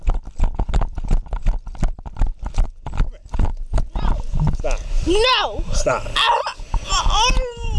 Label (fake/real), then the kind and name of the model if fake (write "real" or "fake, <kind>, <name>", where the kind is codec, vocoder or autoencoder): real